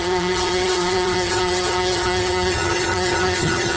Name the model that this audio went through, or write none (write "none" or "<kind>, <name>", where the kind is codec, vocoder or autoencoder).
vocoder, HiFi-GAN